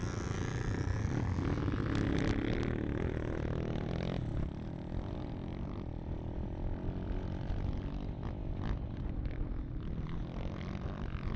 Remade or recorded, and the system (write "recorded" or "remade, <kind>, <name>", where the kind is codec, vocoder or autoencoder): recorded